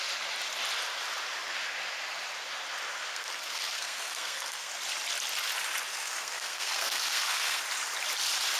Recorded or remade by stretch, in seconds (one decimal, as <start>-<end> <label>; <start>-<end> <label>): 0.0-3.1 recorded; 3.1-4.7 remade; 4.7-5.9 recorded; 5.9-7.6 remade; 7.6-8.6 recorded